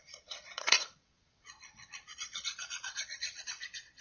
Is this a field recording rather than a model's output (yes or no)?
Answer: no